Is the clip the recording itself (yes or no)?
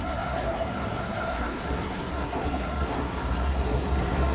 no